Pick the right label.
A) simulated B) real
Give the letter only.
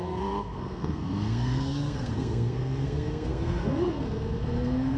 A